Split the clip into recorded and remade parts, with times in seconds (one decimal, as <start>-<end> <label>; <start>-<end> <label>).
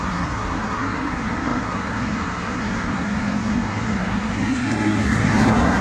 0.0-5.8 remade